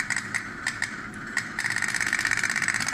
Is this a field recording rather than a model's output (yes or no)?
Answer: no